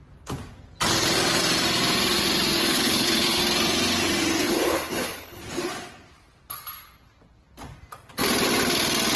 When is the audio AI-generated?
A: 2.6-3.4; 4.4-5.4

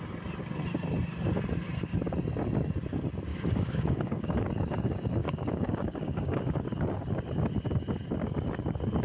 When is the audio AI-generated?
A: 3.3-4.3; 5.2-6.4